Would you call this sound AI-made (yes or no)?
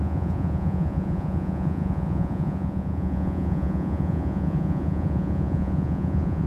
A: yes